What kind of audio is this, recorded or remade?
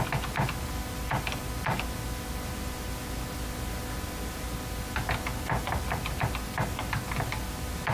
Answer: recorded